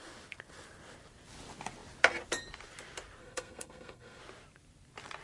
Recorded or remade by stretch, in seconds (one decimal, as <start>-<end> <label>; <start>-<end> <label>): 0.0-3.2 recorded; 3.2-4.2 remade; 4.2-5.2 recorded

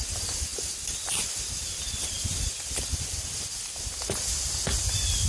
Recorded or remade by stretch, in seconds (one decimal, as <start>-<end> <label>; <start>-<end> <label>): 0.0-5.3 recorded